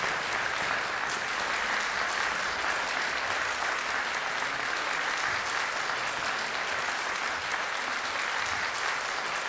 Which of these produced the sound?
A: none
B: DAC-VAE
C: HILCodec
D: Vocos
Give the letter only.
A